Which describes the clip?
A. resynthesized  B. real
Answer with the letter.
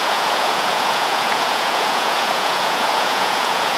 A